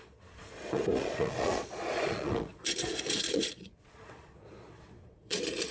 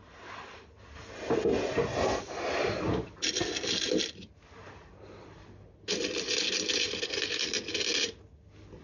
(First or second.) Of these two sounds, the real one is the second